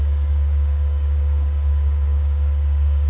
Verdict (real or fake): fake